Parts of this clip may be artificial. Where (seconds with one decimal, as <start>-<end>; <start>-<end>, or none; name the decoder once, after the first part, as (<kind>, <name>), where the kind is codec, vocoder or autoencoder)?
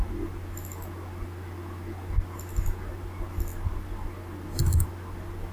none